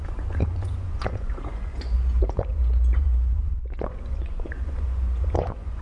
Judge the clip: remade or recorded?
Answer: remade